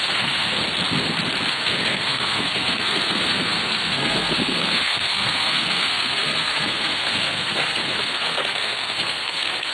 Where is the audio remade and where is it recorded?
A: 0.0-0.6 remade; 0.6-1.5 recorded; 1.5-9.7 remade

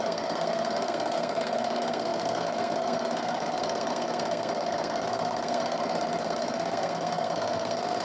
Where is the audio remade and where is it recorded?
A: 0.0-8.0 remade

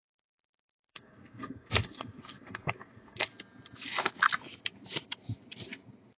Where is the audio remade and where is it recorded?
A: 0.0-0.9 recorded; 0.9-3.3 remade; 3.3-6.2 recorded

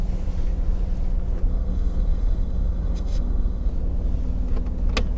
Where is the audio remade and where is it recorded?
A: 0.0-1.5 recorded; 1.5-3.7 remade; 3.7-5.2 recorded

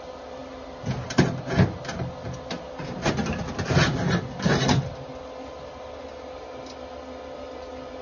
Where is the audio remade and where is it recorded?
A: 0.0-8.0 recorded